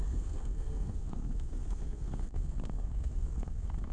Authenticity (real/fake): fake